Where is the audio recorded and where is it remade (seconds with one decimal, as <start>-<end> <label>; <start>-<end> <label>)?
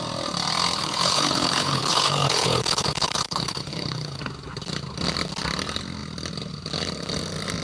0.0-0.8 recorded; 0.8-4.2 remade; 4.2-7.6 recorded